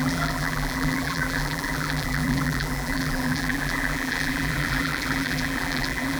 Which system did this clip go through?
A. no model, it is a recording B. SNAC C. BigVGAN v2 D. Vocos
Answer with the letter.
C